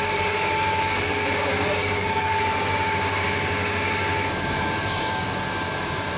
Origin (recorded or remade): remade